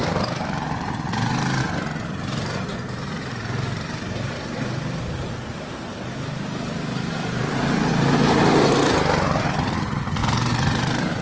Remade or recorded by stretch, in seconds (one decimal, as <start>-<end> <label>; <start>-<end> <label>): 0.0-1.6 remade; 1.6-2.7 recorded; 2.7-7.9 remade; 7.9-10.2 recorded; 10.2-11.2 remade